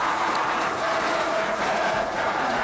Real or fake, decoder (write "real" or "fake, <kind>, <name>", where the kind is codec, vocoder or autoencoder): fake, vocoder, Vocos